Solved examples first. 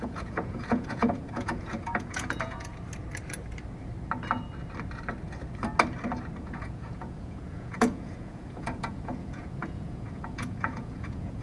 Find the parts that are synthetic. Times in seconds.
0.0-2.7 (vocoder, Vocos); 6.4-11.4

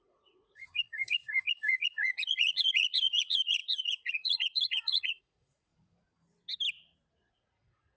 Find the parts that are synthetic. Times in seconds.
0.0-5.7 (vocoder, Vocos); 7.3-8.0